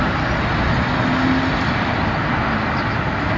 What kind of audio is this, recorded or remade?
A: recorded